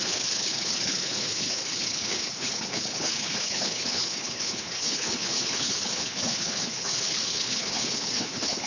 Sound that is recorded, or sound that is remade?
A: remade